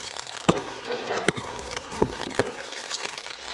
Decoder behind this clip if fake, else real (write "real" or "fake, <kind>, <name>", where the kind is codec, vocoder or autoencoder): fake, codec, SNAC